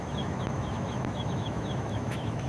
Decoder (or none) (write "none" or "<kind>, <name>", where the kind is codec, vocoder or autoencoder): autoencoder, DAC-VAE